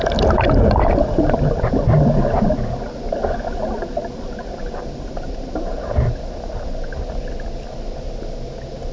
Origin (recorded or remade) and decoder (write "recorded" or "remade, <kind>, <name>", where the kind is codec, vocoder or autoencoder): recorded